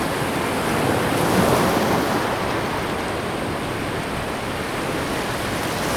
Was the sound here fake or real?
real